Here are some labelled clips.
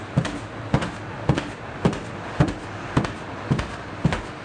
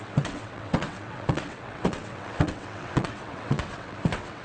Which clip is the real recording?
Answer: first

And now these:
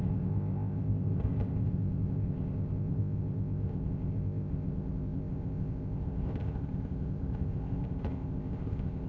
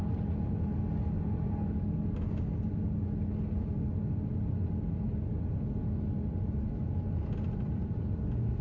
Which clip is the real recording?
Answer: second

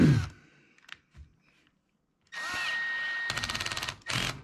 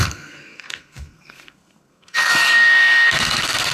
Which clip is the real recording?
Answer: first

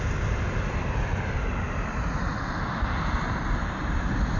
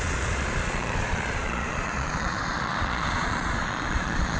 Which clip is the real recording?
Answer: first